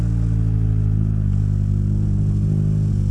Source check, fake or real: real